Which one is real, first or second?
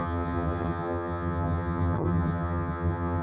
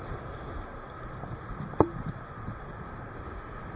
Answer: second